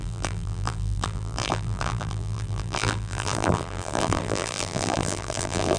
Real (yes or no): no